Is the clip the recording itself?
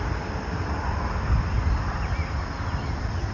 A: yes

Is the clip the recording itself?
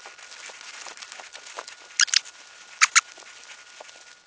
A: yes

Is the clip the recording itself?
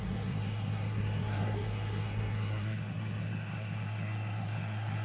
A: no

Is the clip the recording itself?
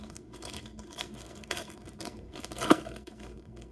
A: no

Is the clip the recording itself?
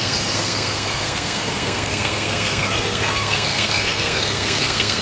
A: no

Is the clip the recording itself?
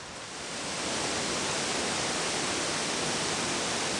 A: yes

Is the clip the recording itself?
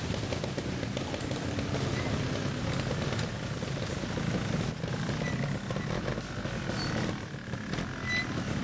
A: yes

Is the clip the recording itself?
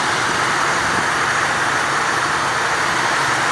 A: yes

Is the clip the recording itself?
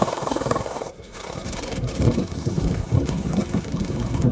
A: no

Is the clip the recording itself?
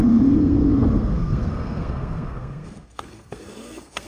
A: no